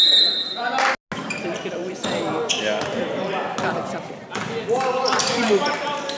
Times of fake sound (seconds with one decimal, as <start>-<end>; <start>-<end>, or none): none